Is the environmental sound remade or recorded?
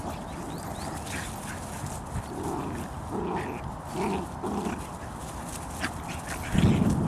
recorded